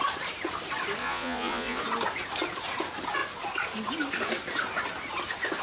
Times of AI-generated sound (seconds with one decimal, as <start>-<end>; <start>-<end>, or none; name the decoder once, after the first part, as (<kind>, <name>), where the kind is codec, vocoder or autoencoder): 1.0-1.8 (vocoder, Vocos)